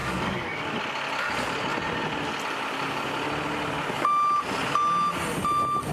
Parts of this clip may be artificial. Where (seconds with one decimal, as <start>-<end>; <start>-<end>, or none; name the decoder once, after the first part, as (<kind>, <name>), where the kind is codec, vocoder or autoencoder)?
0.0-0.8 (codec, DAC)